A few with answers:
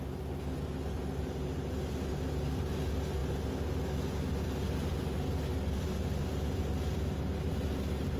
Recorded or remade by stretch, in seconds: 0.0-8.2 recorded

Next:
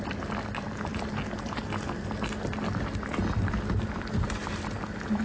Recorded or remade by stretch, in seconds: 0.0-5.2 recorded